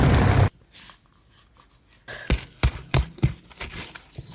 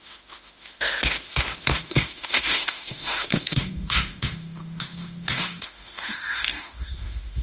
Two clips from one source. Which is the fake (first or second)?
second